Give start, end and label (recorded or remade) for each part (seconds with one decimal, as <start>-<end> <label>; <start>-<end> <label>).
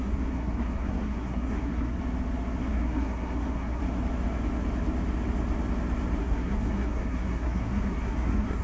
0.0-2.0 remade; 2.0-2.6 recorded; 2.6-3.8 remade; 3.8-6.2 recorded; 6.2-8.6 remade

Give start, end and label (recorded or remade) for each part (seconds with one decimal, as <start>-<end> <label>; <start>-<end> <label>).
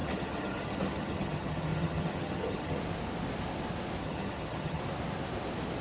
0.0-2.8 remade; 2.8-4.0 recorded; 4.0-4.8 remade; 4.8-5.8 recorded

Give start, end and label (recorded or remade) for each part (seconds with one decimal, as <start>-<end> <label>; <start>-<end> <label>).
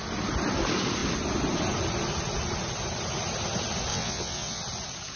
0.0-3.9 recorded; 3.9-4.6 remade; 4.6-5.2 recorded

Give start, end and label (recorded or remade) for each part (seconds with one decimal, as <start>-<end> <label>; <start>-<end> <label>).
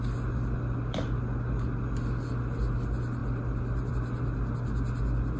0.0-5.4 recorded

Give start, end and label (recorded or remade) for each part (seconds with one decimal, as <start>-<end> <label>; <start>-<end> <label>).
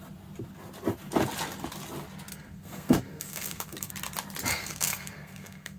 0.0-2.3 recorded; 2.3-3.9 remade; 3.9-4.5 recorded; 4.5-5.8 remade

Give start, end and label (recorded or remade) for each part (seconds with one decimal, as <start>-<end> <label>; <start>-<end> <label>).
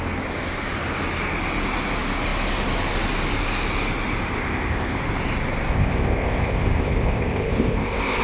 0.0-4.4 recorded; 4.4-5.0 remade; 5.0-5.7 recorded; 5.7-8.2 remade